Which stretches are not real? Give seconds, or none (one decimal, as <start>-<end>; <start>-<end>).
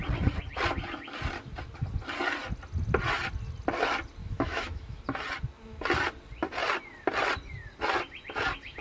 4.2-5.0